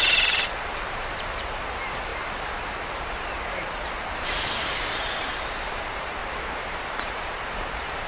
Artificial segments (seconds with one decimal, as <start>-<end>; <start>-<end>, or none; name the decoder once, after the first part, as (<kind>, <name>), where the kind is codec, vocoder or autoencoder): 0.0-6.2 (vocoder, BigVGAN v2); 6.7-8.1